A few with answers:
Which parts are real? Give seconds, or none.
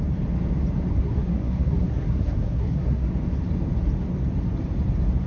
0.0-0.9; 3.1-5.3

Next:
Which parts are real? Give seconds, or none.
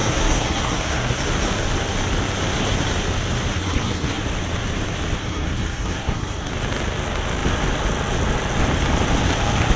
1.2-3.5; 4.2-5.2; 6.5-9.8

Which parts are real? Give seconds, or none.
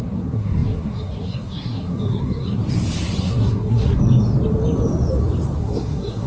2.6-3.2; 4.0-5.6